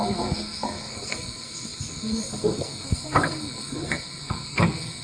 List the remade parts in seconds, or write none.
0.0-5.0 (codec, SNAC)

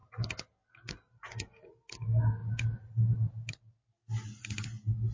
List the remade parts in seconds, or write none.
none

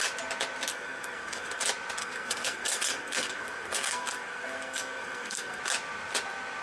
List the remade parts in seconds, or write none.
0.7-1.6 (codec, SNAC); 2.0-5.6

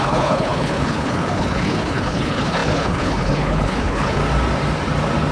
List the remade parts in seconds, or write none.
0.0-4.2 (codec, HILCodec)